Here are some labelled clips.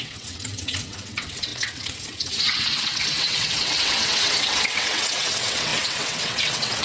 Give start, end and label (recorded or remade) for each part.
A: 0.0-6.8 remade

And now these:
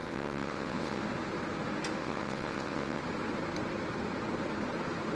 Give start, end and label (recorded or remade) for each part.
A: 0.0-1.0 remade; 1.0-2.0 recorded; 2.0-3.0 remade; 3.0-5.1 recorded

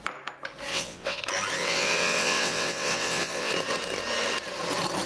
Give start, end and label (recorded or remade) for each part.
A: 0.0-0.7 recorded; 0.7-1.2 remade; 1.2-1.6 recorded; 1.6-3.5 remade; 3.5-5.1 recorded

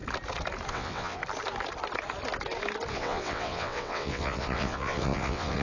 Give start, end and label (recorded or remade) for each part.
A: 0.0-0.7 recorded; 0.7-1.2 remade; 1.2-2.9 recorded; 2.9-5.6 remade

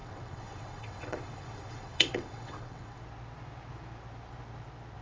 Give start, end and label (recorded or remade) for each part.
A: 0.0-3.0 remade; 3.0-5.0 recorded

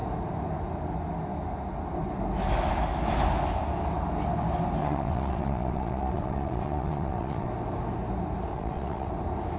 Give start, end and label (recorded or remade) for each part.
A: 0.0-4.8 recorded; 4.8-7.5 remade; 7.5-8.5 recorded; 8.5-9.1 remade; 9.1-9.6 recorded